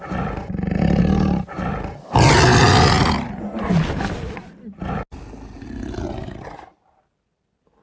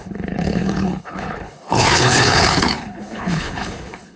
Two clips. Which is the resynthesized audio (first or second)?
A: second